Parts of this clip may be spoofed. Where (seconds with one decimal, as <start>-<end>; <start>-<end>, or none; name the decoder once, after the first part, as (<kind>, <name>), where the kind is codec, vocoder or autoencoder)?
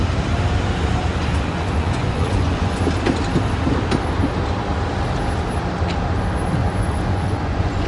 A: 1.3-2.8 (vocoder, Vocos); 6.6-7.9